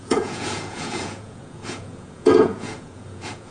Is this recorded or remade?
remade